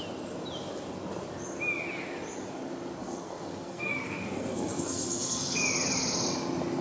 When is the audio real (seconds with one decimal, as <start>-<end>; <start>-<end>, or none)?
0.0-3.0; 5.6-6.8